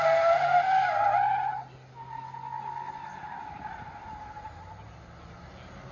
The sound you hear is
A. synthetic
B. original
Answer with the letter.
B